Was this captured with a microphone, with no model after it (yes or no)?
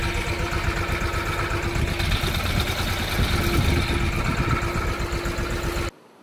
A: yes